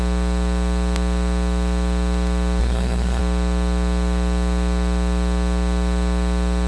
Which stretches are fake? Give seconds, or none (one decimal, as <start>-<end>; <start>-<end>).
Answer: 2.6-3.2